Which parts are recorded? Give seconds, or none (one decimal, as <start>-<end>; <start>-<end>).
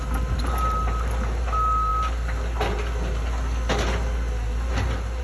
0.0-5.2